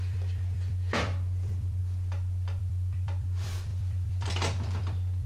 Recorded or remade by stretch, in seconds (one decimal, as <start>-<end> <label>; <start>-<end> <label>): 0.0-1.8 remade; 1.8-2.6 recorded; 2.6-5.3 remade